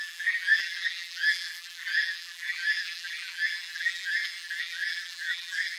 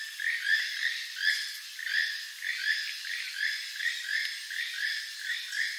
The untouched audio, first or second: second